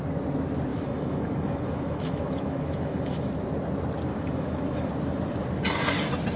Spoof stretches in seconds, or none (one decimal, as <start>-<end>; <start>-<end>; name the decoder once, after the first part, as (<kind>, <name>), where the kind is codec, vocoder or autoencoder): 0.7-3.3 (autoencoder, DAC-VAE); 4.1-4.9